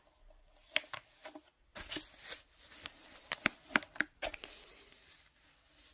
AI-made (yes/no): no